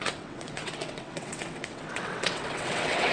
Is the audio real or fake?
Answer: fake